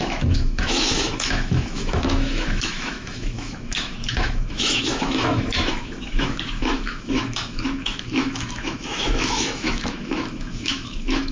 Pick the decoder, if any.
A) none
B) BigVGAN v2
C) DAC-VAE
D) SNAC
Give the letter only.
C